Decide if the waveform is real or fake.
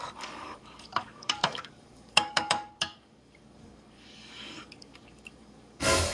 fake